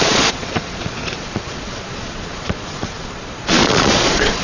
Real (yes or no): no